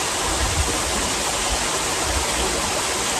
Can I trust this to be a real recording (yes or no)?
yes